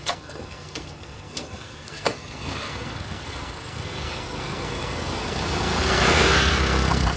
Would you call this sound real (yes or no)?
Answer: no